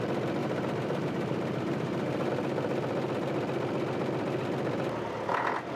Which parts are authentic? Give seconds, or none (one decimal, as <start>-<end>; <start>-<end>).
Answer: 0.0-0.4; 2.3-5.8